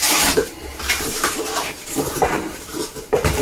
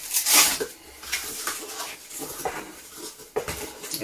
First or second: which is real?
second